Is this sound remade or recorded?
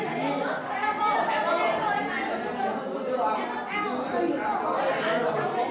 recorded